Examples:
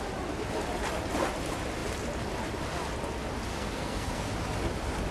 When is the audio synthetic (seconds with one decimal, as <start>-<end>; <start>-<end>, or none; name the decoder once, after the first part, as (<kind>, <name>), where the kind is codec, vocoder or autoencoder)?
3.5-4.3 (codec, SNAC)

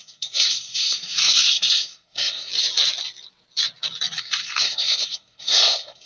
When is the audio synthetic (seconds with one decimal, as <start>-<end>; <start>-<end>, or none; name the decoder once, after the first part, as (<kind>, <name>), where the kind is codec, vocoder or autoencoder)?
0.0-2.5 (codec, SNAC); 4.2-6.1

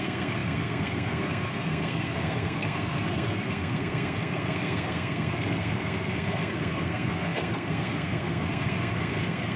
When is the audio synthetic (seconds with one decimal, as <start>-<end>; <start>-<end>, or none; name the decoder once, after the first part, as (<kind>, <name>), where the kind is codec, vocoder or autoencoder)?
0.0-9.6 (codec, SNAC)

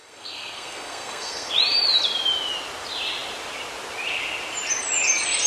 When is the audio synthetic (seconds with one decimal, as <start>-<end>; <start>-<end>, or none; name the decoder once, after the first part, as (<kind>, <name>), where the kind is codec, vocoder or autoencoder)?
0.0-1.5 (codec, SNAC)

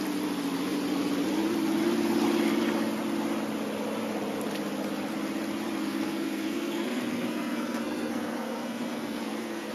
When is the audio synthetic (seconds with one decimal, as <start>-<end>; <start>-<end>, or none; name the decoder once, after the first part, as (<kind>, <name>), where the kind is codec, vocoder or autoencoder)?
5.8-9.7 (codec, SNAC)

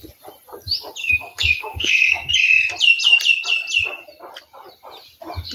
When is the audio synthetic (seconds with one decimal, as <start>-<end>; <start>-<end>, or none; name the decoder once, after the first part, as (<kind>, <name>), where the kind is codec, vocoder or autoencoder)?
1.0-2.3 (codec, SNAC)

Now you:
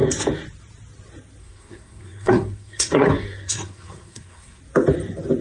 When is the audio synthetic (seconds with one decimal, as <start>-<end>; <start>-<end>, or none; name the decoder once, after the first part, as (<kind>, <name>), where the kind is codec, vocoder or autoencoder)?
1.4-4.6 (codec, SNAC)